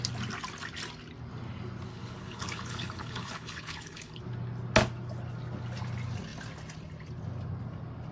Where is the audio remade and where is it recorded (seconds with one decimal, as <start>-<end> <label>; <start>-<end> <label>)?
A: 0.0-1.9 recorded; 1.9-4.2 remade; 4.2-8.1 recorded